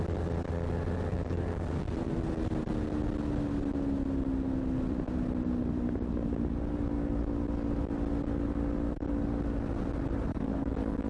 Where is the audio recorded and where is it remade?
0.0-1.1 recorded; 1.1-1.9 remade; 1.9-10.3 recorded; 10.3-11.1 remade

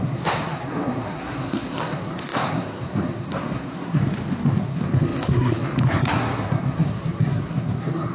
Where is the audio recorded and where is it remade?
0.0-4.0 remade; 4.0-4.6 recorded; 4.6-8.1 remade

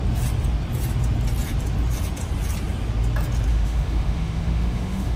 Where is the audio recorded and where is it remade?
0.0-3.5 recorded; 3.5-5.2 remade

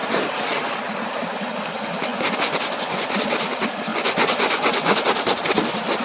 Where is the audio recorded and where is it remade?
0.0-2.1 recorded; 2.1-3.2 remade; 3.2-3.9 recorded; 3.9-5.0 remade; 5.0-6.0 recorded

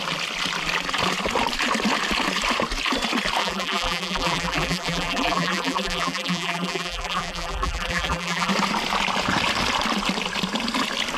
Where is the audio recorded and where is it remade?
0.0-3.4 recorded; 3.4-8.5 remade; 8.5-11.2 recorded

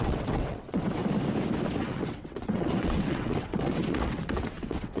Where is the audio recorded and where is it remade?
0.0-1.0 remade; 1.0-1.8 recorded; 1.8-5.0 remade

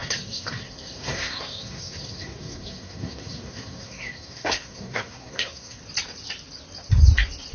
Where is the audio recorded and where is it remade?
0.0-5.8 remade; 5.8-7.5 recorded